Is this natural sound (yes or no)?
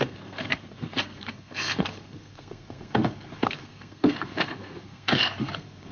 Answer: no